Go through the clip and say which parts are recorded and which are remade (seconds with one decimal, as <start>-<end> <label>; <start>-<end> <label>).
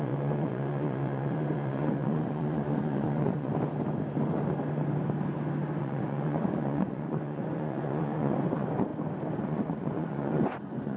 0.0-3.5 remade; 3.5-5.8 recorded; 5.8-8.9 remade; 8.9-9.4 recorded; 9.4-11.0 remade